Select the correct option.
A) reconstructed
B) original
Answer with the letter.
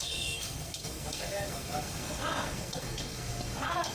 A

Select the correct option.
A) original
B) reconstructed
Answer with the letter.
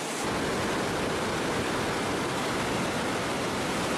A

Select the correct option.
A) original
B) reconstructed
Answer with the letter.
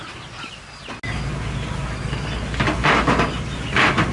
A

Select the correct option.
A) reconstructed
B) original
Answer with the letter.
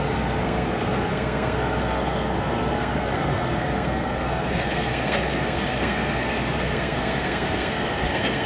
A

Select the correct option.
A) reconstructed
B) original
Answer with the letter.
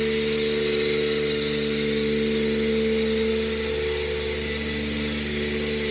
B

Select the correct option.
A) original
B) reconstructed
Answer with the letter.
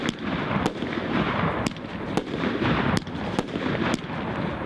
A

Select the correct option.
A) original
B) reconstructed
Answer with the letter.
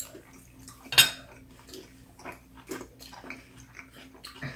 A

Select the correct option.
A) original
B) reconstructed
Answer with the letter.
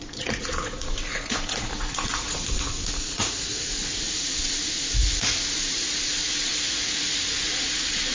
B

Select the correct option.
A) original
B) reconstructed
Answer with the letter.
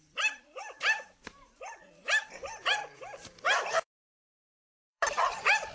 B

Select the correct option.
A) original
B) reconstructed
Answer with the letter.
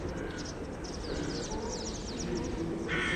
A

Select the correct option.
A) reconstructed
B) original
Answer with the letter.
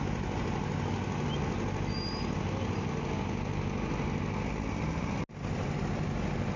B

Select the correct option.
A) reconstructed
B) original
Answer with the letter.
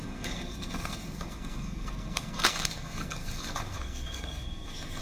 A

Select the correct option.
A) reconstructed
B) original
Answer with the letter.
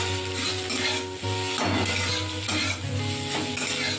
B